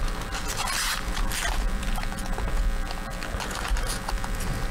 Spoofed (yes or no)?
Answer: no